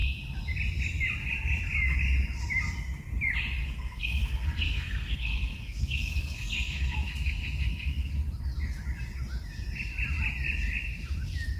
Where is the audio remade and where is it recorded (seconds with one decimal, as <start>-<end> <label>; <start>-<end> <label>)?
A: 0.0-3.6 recorded; 3.6-8.1 remade; 8.1-11.6 recorded